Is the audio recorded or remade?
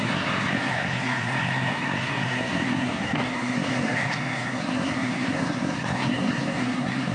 remade